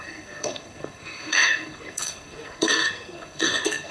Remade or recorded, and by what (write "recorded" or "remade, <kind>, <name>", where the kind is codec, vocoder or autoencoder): remade, codec, SNAC